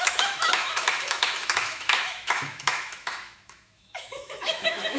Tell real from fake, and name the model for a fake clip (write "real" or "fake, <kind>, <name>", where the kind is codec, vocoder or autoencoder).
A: fake, autoencoder, DAC-VAE